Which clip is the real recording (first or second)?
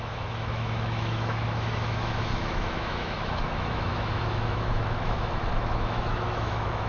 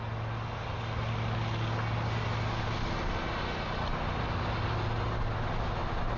second